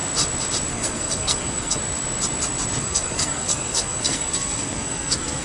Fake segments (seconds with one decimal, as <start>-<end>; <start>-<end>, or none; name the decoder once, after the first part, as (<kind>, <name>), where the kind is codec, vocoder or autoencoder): 0.7-1.8 (codec, SNAC); 2.8-5.4